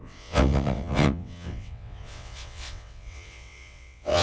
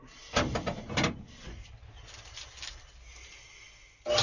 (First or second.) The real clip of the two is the second